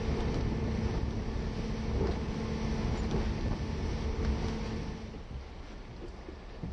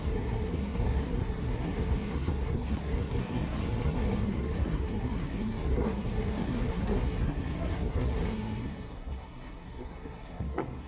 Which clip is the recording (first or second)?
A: first